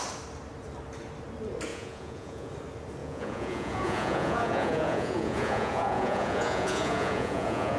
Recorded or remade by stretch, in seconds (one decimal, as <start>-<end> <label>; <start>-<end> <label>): 0.0-1.7 recorded; 1.7-2.5 remade; 2.5-3.0 recorded; 3.0-7.8 remade